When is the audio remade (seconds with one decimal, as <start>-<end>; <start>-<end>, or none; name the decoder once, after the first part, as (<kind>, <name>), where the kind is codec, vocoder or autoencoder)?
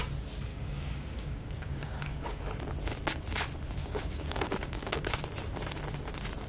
0.5-2.4 (codec, DAC); 3.8-5.2